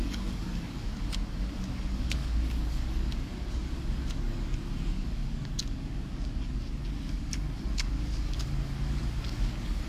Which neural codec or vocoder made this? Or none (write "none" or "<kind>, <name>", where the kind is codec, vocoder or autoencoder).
codec, DAC